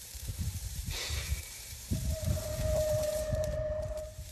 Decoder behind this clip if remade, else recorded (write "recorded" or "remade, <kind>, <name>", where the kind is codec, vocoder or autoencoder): remade, vocoder, BigVGAN v2